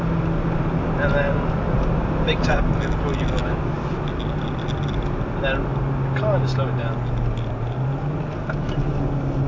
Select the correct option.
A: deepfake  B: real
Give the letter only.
B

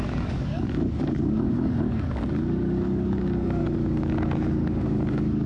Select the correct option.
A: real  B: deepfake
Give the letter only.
B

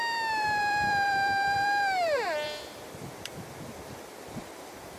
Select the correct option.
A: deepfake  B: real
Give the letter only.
A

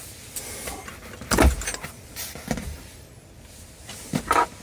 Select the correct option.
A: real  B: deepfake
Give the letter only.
A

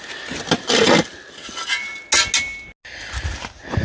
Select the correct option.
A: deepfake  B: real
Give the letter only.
B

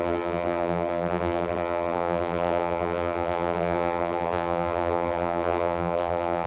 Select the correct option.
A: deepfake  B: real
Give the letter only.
A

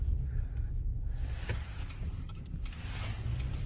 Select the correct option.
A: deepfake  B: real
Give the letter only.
B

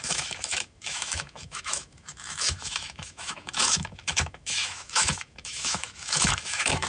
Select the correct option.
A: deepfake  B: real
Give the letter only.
A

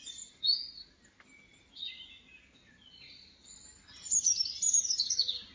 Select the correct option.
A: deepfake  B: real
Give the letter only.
B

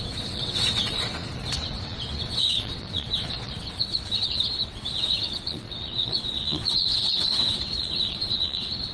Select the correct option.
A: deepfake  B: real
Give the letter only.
A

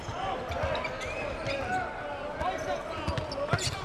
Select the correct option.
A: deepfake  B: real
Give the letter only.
B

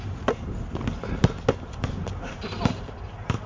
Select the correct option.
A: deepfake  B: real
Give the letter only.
B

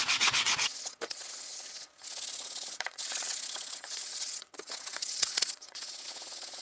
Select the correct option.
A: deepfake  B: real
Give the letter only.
A